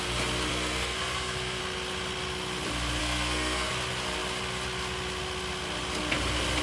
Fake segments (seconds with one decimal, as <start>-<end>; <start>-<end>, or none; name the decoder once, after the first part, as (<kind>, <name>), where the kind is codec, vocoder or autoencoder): 0.5-1.6 (codec, SNAC); 3.0-3.7